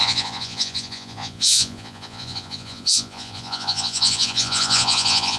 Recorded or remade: remade